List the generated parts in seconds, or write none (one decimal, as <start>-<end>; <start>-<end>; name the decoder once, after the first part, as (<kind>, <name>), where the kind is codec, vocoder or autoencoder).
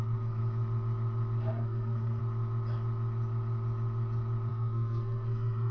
0.0-0.4 (codec, SNAC); 1.4-2.2; 4.5-5.7